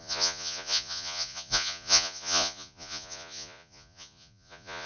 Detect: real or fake fake